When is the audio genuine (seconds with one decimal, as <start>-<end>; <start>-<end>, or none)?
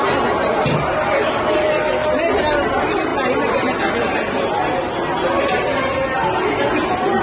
0.0-7.2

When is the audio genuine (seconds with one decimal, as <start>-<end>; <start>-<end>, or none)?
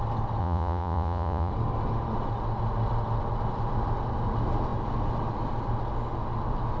0.0-0.4; 1.5-6.8